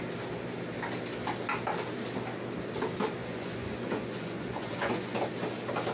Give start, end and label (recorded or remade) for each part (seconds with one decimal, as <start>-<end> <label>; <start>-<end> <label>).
0.0-3.2 recorded; 3.2-5.2 remade; 5.2-5.9 recorded